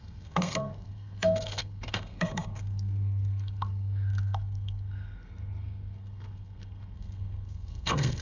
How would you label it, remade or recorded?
remade